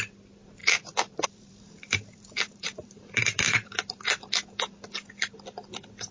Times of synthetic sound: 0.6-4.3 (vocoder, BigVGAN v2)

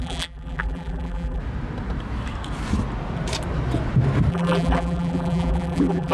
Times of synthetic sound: 0.0-1.4 (vocoder, BigVGAN v2); 4.3-6.1

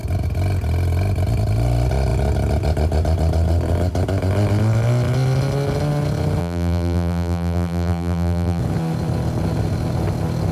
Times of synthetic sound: 6.4-8.6 (vocoder, BigVGAN v2)

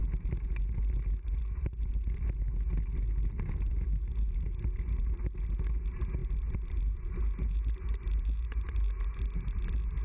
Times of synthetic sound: 3.1-5.2 (vocoder, BigVGAN v2); 6.2-9.2

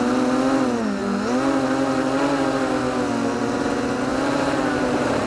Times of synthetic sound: 4.1-5.3 (vocoder, BigVGAN v2)

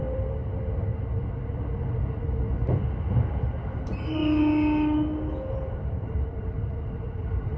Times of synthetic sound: 0.0-0.9 (vocoder, BigVGAN v2); 3.3-4.2; 5.5-7.6